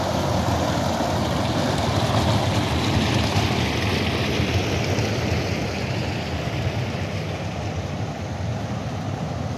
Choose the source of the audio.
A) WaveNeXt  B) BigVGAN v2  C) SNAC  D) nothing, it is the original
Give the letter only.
D